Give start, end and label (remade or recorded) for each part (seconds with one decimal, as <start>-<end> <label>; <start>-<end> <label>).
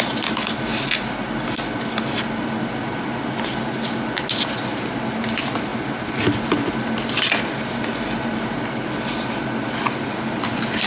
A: 0.0-10.9 recorded